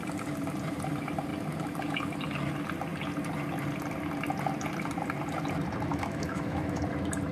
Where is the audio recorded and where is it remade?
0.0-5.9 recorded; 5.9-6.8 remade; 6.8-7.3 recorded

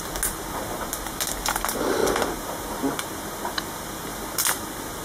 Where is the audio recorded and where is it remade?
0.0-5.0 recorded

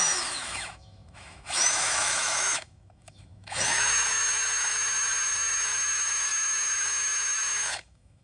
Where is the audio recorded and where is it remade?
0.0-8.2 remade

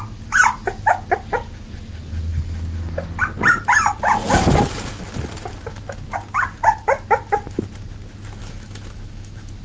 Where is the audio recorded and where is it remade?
0.0-8.4 recorded; 8.4-9.6 remade

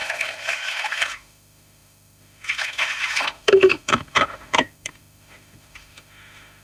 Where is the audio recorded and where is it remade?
0.0-6.6 remade

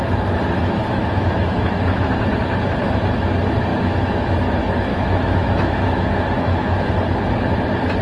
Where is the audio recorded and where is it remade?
0.0-0.8 recorded; 0.8-2.0 remade; 2.0-3.7 recorded; 3.7-4.3 remade; 4.3-4.9 recorded; 4.9-6.9 remade; 6.9-8.0 recorded

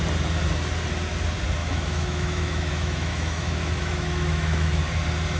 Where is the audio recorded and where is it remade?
0.0-1.6 recorded; 1.6-4.8 remade; 4.8-5.4 recorded